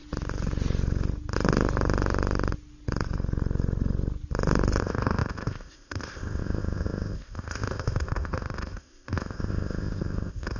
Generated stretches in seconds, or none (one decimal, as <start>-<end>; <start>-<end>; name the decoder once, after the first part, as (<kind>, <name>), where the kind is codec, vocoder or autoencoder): 4.8-10.6 (codec, ZipCodec)